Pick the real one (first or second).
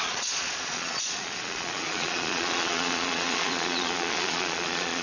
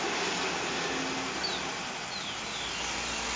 second